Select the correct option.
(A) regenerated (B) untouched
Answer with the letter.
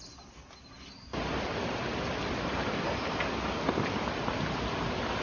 B